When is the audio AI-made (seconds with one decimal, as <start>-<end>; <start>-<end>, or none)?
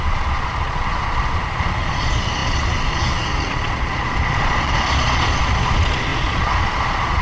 0.0-7.2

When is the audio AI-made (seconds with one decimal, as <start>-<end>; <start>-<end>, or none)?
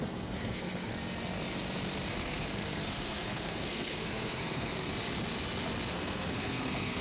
0.0-0.9; 2.1-4.9; 5.9-7.0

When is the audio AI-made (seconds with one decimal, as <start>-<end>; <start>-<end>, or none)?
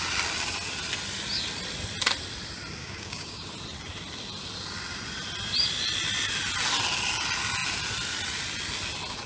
2.8-3.5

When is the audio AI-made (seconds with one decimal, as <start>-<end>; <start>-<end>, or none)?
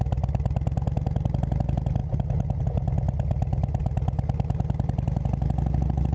none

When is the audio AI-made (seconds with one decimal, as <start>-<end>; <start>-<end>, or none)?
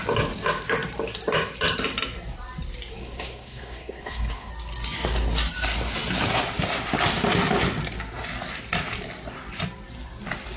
3.0-4.5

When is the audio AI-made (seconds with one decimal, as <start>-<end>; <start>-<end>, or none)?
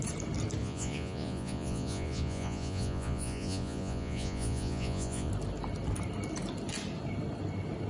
0.6-5.3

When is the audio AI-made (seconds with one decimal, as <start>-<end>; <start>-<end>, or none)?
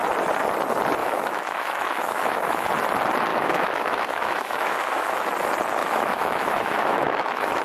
1.0-2.7; 3.3-5.3; 5.8-7.6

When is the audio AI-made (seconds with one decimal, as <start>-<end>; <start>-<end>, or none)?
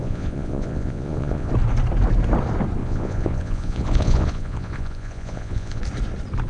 0.0-1.5; 2.8-5.8